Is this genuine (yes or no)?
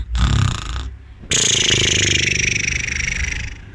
yes